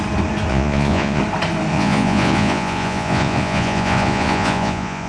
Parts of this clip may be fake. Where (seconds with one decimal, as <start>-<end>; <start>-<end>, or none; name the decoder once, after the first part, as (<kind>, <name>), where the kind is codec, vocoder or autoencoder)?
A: 0.5-1.2 (vocoder, Vocos); 1.7-5.1